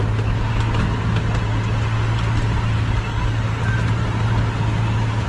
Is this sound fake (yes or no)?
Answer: no